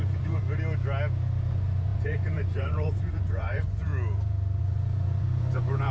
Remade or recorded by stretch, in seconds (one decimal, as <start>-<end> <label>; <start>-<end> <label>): 0.0-0.4 remade; 0.4-1.5 recorded; 1.5-3.9 remade; 3.9-4.6 recorded; 4.6-5.9 remade